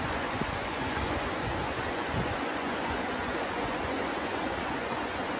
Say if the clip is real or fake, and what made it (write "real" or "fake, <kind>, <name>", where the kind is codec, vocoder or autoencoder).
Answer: fake, vocoder, Vocos